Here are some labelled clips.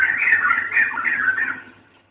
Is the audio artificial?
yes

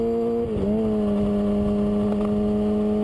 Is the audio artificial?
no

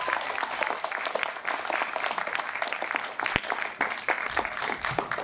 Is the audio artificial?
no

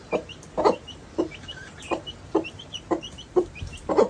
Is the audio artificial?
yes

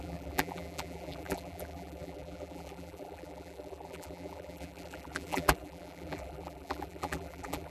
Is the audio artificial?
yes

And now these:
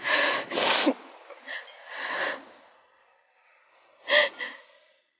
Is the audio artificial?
no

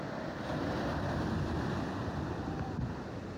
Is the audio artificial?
no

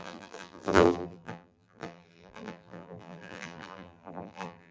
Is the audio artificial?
yes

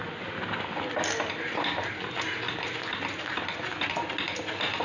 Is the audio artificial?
no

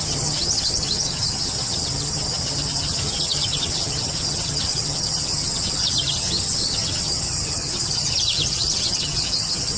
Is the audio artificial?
yes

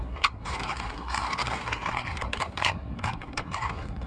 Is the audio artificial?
yes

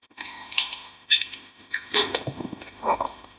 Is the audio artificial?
yes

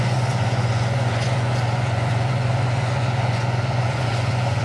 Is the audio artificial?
yes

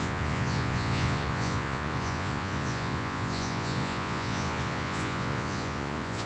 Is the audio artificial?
yes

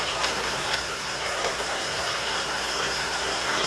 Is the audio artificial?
yes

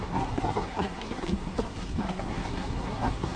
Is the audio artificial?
yes